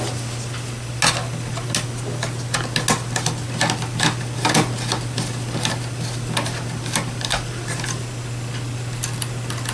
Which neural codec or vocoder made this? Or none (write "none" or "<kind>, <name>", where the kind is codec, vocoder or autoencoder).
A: none